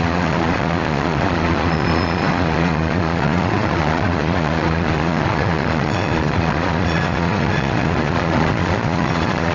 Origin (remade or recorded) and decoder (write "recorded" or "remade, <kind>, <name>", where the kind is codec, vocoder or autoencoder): remade, vocoder, Vocos